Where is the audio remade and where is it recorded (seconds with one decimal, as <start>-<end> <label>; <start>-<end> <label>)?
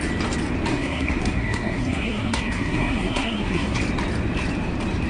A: 0.0-0.7 recorded; 0.7-3.8 remade; 3.8-5.1 recorded